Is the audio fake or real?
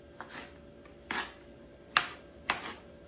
real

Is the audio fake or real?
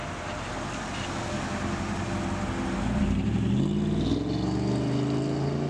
real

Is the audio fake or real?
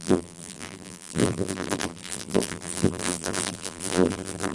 fake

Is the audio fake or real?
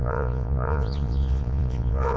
fake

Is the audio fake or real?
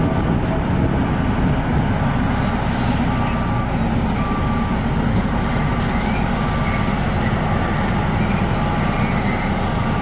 real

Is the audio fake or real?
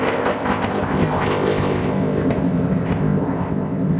fake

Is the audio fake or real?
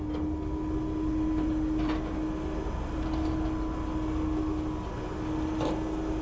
real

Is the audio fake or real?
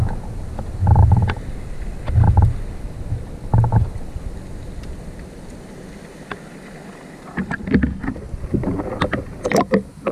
real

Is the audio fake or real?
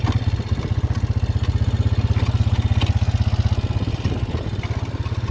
real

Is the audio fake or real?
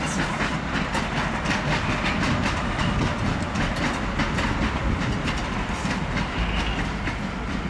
real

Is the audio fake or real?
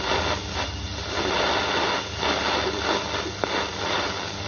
real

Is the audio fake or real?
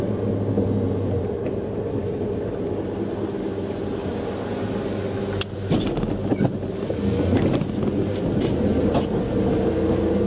real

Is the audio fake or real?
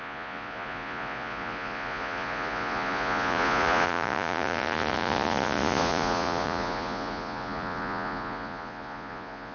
fake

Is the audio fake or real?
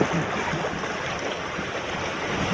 real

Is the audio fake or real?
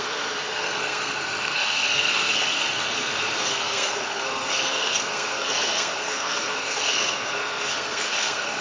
fake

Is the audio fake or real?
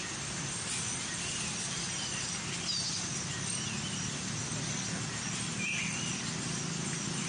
real